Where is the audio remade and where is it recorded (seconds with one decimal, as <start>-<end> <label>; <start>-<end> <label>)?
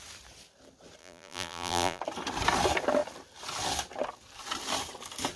0.0-1.0 recorded; 1.0-2.0 remade; 2.0-5.4 recorded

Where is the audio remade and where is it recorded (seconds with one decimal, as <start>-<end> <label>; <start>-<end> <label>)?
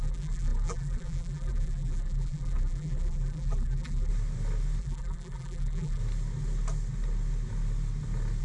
0.0-4.1 remade; 4.1-4.8 recorded; 4.8-6.0 remade; 6.0-8.4 recorded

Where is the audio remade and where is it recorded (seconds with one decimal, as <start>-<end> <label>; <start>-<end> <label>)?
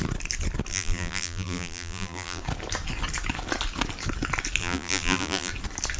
0.0-0.7 recorded; 0.7-2.4 remade; 2.4-4.6 recorded; 4.6-5.5 remade; 5.5-6.0 recorded